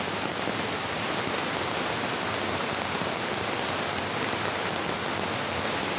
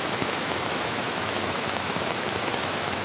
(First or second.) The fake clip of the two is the second